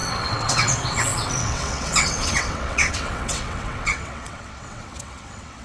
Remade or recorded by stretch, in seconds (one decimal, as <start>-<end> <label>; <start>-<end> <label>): 0.0-5.6 remade